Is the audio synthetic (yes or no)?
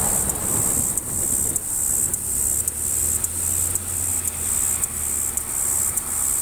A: no